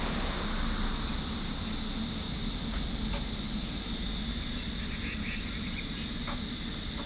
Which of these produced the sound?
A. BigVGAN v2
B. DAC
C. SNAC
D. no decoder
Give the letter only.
D